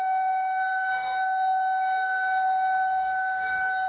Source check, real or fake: fake